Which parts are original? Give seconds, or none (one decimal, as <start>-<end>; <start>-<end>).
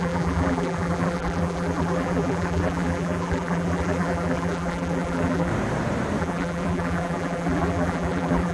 5.5-6.2